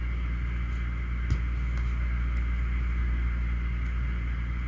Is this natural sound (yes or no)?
yes